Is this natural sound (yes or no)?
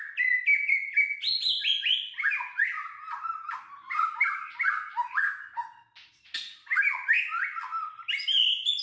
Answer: yes